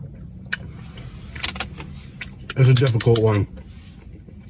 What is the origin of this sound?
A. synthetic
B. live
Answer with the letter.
B